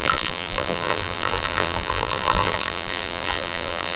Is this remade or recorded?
remade